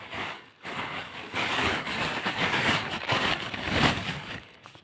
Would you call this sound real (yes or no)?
no